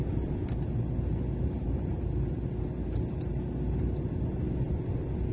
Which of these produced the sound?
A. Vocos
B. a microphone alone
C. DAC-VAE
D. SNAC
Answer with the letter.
B